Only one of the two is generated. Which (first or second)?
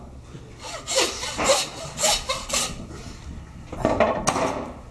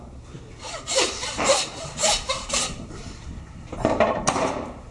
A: second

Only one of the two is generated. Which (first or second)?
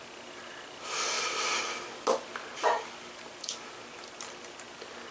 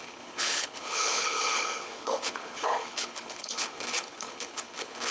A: second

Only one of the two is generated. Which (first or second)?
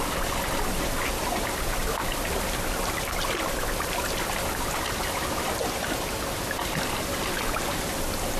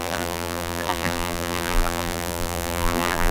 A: second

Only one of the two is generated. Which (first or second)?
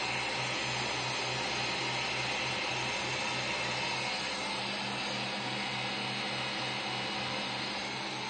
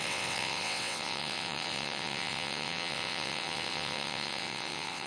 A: second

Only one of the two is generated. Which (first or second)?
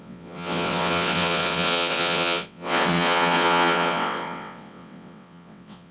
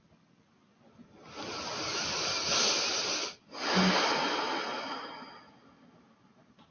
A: first